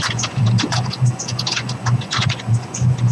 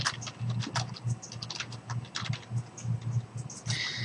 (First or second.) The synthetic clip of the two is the first